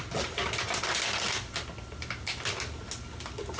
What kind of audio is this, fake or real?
real